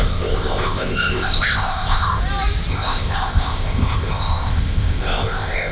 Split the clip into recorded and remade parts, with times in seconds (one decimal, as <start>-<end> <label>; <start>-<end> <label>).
0.0-2.2 remade; 2.2-2.7 recorded; 2.7-5.7 remade